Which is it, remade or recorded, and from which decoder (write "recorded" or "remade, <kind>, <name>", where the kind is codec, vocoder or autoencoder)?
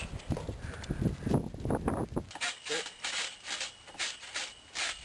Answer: recorded